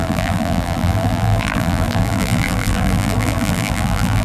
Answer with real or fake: fake